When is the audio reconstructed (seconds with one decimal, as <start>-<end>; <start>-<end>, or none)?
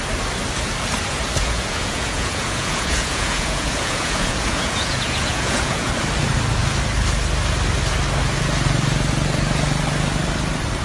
1.4-5.9